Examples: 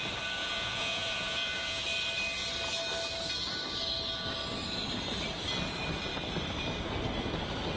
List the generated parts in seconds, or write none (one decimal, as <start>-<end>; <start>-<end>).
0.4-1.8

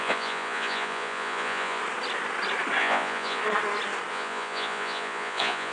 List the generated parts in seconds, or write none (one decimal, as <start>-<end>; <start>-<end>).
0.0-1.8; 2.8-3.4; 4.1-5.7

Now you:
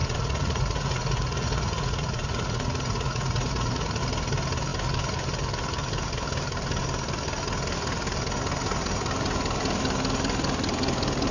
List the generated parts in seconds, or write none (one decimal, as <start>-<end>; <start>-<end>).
0.0-4.0

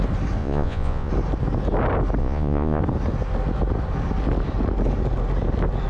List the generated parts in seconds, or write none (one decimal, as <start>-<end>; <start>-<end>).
0.4-1.1; 2.2-2.8

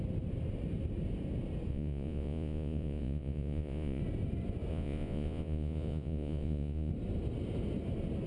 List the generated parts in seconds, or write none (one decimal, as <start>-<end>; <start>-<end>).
1.7-4.0; 4.7-6.9

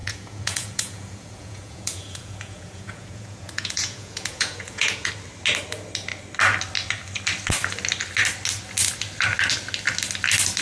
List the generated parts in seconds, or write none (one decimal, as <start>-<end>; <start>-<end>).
0.0-5.1

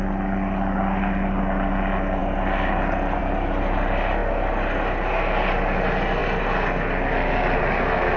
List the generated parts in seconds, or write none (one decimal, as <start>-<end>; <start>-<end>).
none

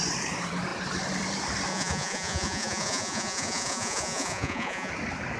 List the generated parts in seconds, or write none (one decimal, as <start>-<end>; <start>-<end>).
1.7-4.9